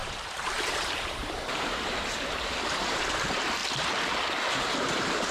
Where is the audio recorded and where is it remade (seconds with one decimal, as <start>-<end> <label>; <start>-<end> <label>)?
0.0-3.6 remade; 3.6-4.7 recorded; 4.7-5.3 remade